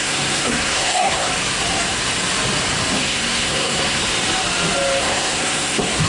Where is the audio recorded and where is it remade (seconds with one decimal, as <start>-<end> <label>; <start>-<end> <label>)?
0.0-1.3 remade; 1.3-3.0 recorded; 3.0-4.0 remade; 4.0-5.0 recorded; 5.0-6.1 remade